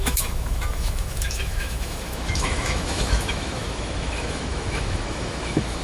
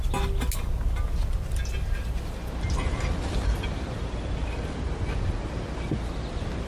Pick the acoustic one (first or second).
second